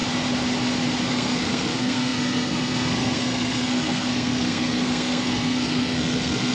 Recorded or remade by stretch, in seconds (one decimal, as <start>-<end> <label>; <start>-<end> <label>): 0.0-1.1 recorded; 1.1-6.5 remade